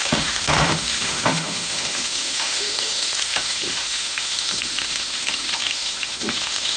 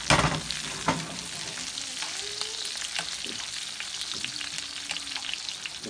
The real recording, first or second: second